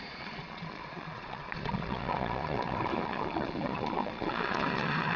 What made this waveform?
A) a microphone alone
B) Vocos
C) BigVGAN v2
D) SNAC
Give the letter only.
B